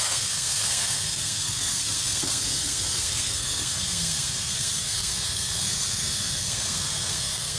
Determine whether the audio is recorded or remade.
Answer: remade